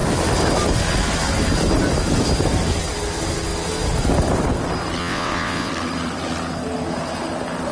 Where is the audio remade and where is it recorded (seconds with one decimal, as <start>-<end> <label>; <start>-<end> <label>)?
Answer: 0.0-5.0 recorded; 5.0-5.7 remade; 5.7-7.7 recorded